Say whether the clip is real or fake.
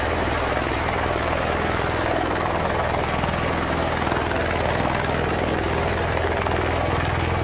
fake